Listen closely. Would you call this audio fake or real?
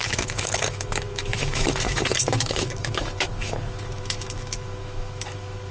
fake